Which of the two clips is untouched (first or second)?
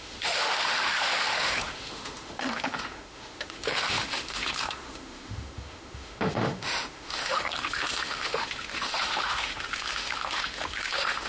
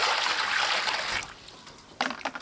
second